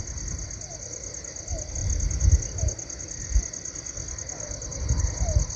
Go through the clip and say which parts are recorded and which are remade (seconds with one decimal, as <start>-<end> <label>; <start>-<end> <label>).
0.0-5.6 recorded